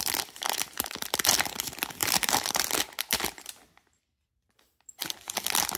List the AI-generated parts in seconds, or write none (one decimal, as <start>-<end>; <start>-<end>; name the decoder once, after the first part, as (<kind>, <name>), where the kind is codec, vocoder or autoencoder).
2.0-2.6 (vocoder, BigVGAN v2)